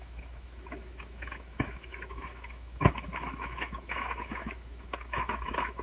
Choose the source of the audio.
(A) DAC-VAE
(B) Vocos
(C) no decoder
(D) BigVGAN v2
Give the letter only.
A